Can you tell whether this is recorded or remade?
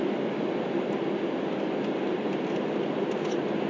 recorded